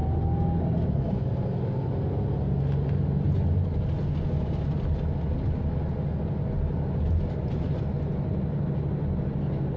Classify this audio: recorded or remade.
recorded